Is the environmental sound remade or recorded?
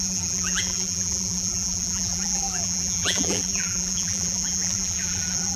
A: remade